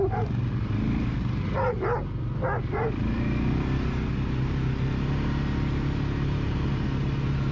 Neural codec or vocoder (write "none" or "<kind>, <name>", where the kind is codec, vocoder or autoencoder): none